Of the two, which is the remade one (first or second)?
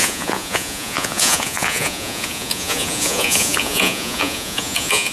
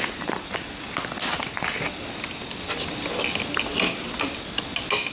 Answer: first